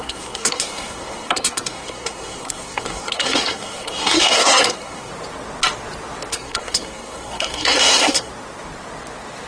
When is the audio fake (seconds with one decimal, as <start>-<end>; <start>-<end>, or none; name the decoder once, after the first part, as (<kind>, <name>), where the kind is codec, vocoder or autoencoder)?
0.0-5.1 (codec, SNAC); 6.3-8.3